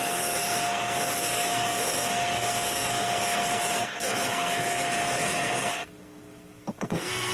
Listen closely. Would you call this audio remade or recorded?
remade